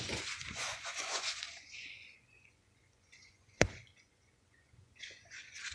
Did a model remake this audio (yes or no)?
yes